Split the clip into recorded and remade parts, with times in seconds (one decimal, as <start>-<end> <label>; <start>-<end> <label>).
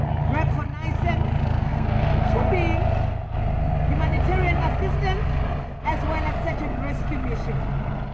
0.0-1.6 recorded; 1.6-2.5 remade; 2.5-8.1 recorded